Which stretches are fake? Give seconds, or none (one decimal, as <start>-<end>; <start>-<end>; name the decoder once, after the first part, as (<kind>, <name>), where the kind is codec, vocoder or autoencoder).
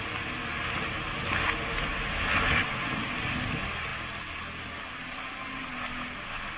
none